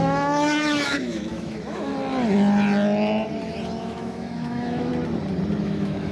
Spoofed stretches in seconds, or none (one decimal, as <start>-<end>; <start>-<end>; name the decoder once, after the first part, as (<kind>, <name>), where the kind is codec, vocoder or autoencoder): 0.0-1.9 (autoencoder, DAC-VAE); 3.8-4.9; 5.6-6.1